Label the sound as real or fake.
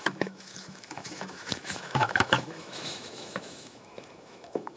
fake